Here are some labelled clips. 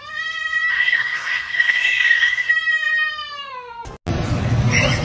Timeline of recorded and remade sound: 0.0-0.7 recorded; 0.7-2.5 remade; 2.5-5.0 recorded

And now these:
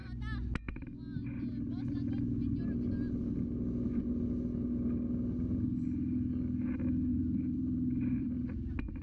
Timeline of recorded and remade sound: 0.0-7.1 recorded; 7.1-8.4 remade; 8.4-9.0 recorded

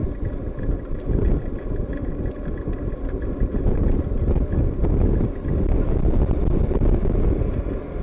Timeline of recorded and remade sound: 0.0-8.0 recorded

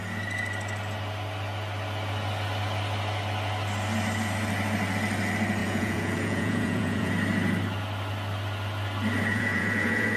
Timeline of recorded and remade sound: 0.0-5.6 recorded; 5.6-7.1 remade; 7.1-9.3 recorded; 9.3-10.2 remade

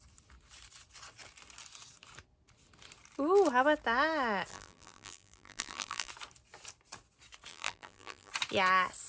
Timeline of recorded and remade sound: 0.0-4.5 recorded; 4.5-6.1 remade; 6.1-7.5 recorded; 7.5-8.3 remade; 8.3-9.1 recorded

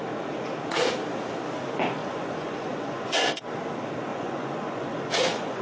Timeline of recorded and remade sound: 0.0-2.0 recorded; 2.0-3.3 remade; 3.3-4.1 recorded; 4.1-5.6 remade

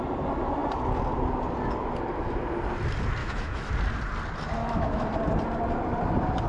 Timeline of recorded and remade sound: 0.0-3.2 recorded; 3.2-3.7 remade; 3.7-4.6 recorded; 4.6-5.1 remade; 5.1-6.5 recorded

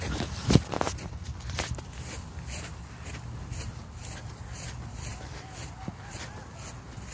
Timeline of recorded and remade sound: 0.0-7.1 recorded